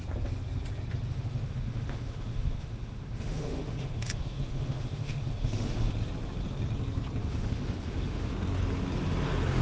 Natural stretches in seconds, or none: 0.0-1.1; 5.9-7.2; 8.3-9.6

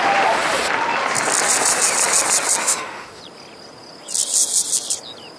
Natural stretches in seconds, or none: 0.0-2.6; 3.2-5.4